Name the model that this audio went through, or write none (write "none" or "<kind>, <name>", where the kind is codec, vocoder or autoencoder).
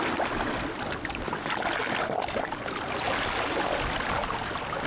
none